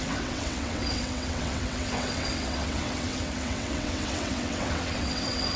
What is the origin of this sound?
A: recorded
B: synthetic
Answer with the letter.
B